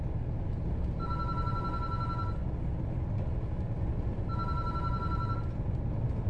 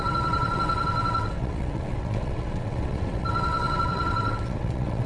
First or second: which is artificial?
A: second